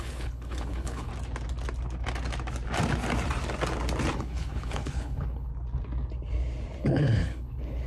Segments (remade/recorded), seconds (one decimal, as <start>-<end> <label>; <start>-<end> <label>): 0.0-1.1 remade; 1.1-4.1 recorded; 4.1-5.5 remade; 5.5-6.8 recorded; 6.8-7.9 remade